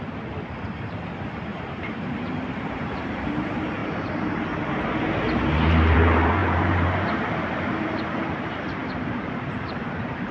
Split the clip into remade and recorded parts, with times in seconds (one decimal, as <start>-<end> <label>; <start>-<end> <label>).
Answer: 0.0-3.8 remade; 3.8-5.5 recorded; 5.5-10.3 remade